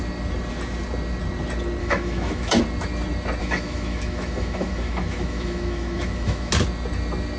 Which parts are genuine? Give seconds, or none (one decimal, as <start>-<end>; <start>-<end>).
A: 0.0-1.8; 2.6-3.4; 6.5-7.4